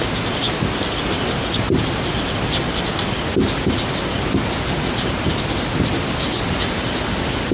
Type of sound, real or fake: real